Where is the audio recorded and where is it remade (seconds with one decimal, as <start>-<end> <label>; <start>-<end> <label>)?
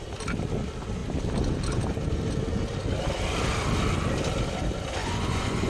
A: 0.0-5.0 recorded; 5.0-5.7 remade